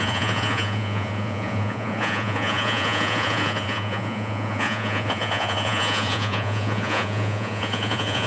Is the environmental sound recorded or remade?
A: remade